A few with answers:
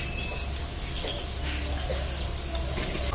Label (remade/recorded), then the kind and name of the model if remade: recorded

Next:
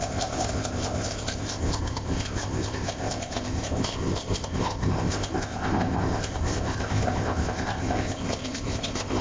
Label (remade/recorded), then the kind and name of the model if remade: remade, codec, ZipCodec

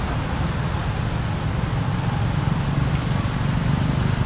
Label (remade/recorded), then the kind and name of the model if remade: recorded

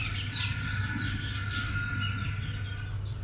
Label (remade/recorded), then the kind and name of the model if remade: recorded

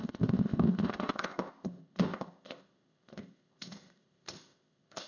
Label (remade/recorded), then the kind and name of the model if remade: remade, codec, ZipCodec